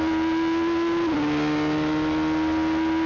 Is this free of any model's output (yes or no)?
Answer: yes